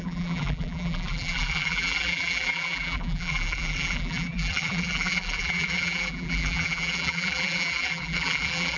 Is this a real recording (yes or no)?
no